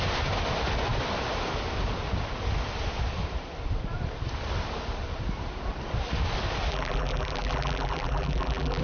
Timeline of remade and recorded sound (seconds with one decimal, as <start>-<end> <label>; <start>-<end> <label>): 0.0-6.7 recorded; 6.7-8.8 remade